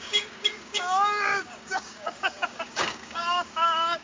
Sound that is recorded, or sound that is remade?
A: remade